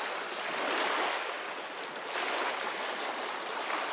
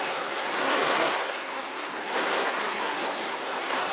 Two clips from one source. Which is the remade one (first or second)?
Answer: second